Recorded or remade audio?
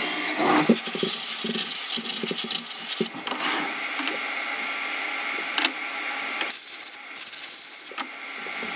recorded